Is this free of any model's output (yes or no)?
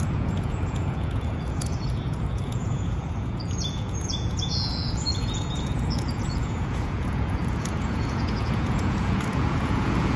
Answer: no